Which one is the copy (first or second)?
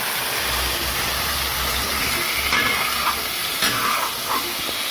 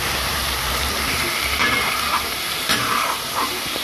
second